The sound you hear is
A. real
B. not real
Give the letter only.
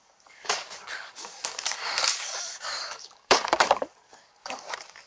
B